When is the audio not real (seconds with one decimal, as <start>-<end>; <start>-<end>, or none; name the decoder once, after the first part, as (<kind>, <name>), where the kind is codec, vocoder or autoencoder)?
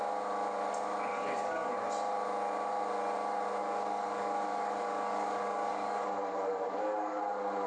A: 1.1-1.7 (codec, DAC); 3.6-7.2